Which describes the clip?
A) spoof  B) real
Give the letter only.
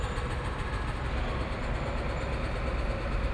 B